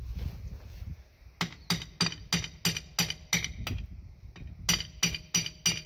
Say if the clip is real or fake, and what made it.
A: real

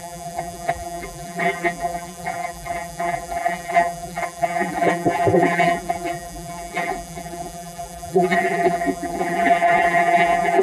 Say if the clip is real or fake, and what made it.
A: fake, vocoder, BigVGAN v2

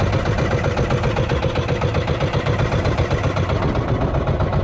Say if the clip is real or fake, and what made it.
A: real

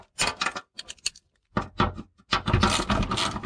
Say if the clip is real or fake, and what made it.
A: real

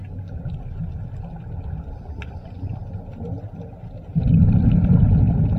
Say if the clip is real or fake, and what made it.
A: real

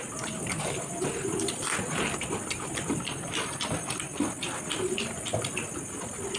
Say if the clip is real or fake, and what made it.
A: real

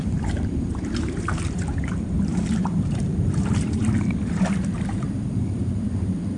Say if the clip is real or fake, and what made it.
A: fake, vocoder, BigVGAN v2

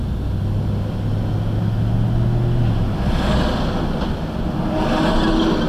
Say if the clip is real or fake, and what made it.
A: real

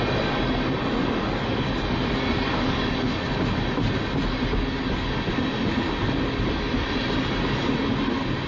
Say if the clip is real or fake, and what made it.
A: real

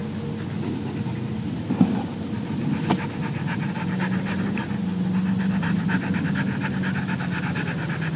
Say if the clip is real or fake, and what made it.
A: real